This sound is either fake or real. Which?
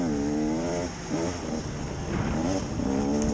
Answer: real